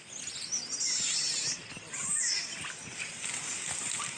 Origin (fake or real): real